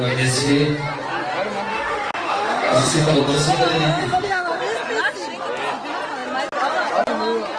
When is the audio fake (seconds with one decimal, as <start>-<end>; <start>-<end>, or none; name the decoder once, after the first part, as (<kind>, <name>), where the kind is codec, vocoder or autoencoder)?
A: 1.7-3.2 (autoencoder, DAC-VAE); 4.0-4.6